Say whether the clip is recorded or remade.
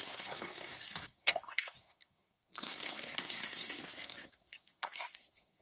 remade